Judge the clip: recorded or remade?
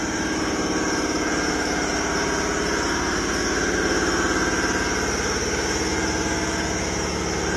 recorded